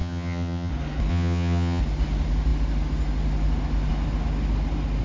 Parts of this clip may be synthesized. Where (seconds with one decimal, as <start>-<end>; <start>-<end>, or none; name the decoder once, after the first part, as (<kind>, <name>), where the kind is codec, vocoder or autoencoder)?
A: 0.0-0.7 (vocoder, HiFi-GAN); 1.1-1.8

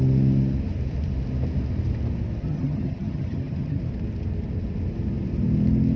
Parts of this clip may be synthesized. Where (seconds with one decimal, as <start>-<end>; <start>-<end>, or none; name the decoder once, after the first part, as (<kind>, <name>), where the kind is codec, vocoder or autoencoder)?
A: 2.4-3.8 (vocoder, HiFi-GAN)

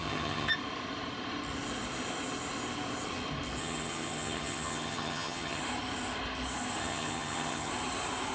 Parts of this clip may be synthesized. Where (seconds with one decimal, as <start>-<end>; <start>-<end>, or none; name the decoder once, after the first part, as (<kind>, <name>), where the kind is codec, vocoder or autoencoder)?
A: 0.0-0.5 (vocoder, HiFi-GAN); 3.6-5.6; 6.8-7.7

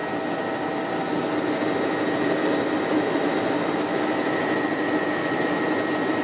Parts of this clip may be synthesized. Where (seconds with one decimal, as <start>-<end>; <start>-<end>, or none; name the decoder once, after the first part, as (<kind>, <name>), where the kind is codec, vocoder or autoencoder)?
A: none

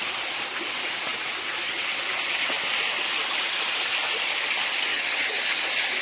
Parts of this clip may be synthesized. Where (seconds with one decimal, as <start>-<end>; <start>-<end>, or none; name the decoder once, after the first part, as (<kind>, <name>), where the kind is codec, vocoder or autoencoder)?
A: 4.9-5.4 (vocoder, HiFi-GAN)

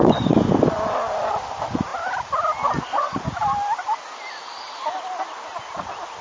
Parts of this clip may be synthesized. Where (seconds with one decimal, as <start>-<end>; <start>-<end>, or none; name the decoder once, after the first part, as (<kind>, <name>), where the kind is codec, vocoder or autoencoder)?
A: none